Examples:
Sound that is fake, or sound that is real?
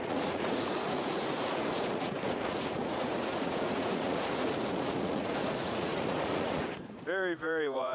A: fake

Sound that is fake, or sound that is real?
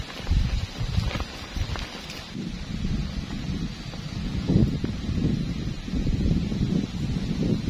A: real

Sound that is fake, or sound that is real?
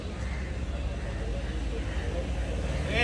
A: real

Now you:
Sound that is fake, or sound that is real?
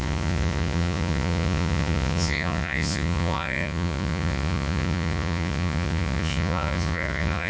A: fake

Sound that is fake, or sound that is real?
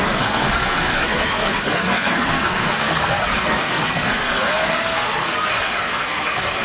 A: fake